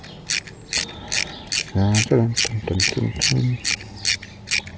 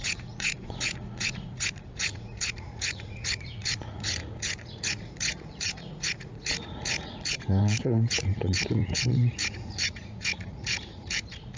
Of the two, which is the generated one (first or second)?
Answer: second